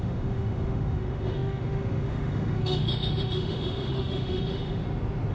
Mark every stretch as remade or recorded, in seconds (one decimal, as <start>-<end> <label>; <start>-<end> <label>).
0.0-4.8 remade; 4.8-5.3 recorded